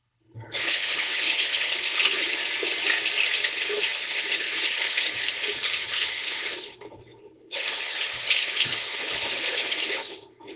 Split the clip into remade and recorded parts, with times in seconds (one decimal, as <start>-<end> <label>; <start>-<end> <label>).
0.0-2.4 remade; 2.4-3.5 recorded; 3.5-10.6 remade